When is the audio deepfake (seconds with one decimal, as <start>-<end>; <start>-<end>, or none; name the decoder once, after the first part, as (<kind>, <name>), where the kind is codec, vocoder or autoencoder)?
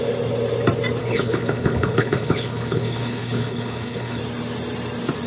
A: 1.0-4.2 (codec, HILCodec)